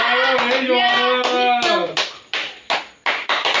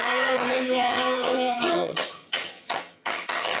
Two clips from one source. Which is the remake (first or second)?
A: second